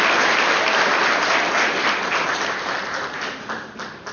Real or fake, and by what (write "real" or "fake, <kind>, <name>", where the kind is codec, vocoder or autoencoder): real